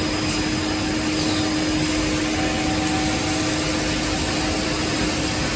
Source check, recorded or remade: recorded